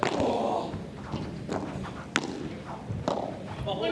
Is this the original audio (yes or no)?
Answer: yes